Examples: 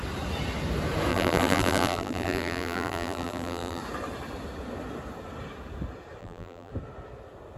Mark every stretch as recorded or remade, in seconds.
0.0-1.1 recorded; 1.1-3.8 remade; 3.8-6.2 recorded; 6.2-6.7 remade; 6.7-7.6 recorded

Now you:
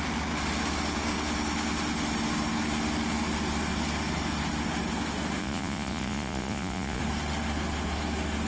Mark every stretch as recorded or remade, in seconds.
0.0-5.4 recorded; 5.4-7.0 remade; 7.0-8.5 recorded

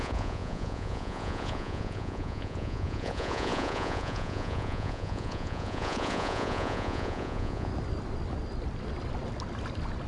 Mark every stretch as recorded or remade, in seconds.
0.0-7.7 remade; 7.7-10.1 recorded

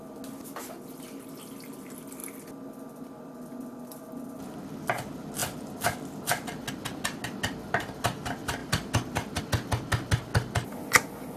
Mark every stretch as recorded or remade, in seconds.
0.0-8.6 recorded; 8.6-9.4 remade; 9.4-11.4 recorded

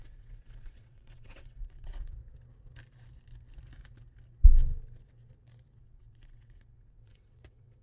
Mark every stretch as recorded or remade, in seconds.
0.0-2.2 remade; 2.2-5.8 recorded; 5.8-7.8 remade

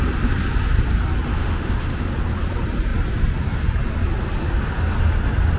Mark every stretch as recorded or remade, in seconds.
0.0-1.3 recorded; 1.3-2.1 remade; 2.1-5.6 recorded